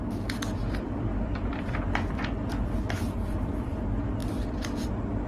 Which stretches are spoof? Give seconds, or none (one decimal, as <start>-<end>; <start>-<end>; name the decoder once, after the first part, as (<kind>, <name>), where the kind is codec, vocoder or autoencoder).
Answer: 0.6-3.8 (vocoder, BigVGAN v2); 4.2-5.3